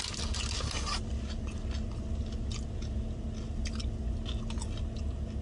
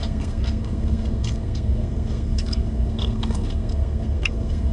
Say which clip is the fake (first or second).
second